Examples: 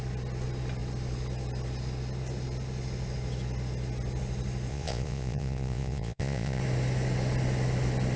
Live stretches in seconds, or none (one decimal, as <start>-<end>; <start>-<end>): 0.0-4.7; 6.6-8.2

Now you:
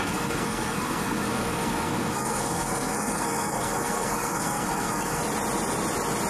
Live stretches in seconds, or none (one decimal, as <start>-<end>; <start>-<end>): 5.2-6.3

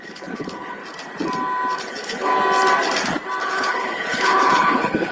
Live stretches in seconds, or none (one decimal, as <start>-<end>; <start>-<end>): 0.8-1.8; 2.3-3.4

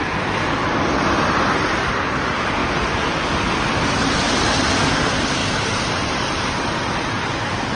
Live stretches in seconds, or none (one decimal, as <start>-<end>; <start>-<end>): 0.0-7.8

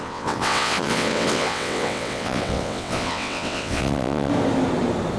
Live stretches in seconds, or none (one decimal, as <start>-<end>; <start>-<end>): 4.3-5.2

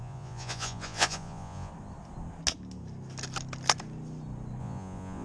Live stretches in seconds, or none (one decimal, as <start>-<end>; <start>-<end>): 1.7-4.6

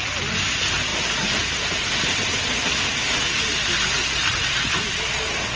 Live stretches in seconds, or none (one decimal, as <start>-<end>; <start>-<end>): 0.0-5.6

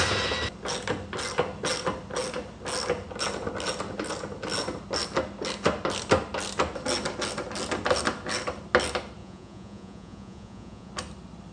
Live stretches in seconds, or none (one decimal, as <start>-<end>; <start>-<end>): 0.0-9.2; 10.9-11.5